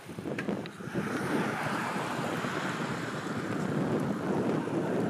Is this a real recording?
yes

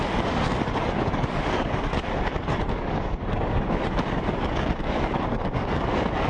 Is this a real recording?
no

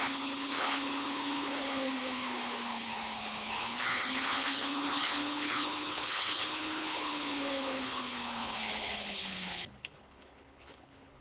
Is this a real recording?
no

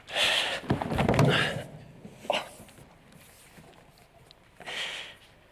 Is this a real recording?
yes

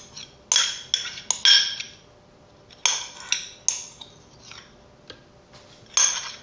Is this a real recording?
yes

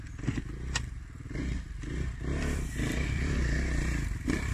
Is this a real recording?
no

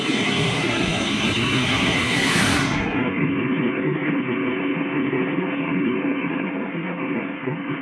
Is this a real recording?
no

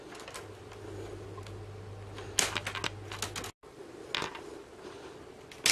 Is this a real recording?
yes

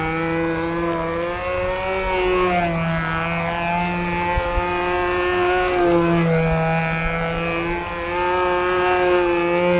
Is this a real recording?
yes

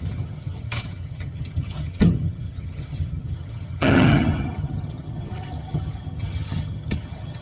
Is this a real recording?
no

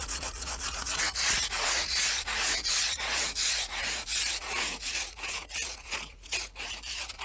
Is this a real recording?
no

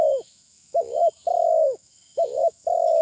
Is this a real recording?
no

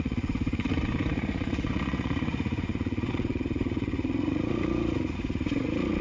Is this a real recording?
no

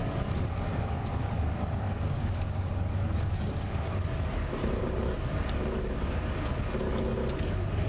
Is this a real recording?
no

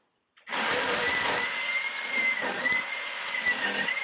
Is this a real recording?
no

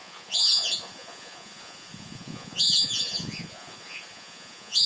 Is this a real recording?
no